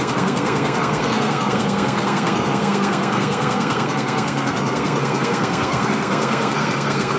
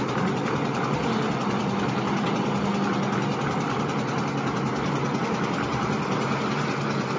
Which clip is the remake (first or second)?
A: first